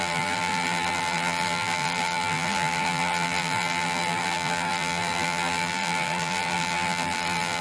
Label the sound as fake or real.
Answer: fake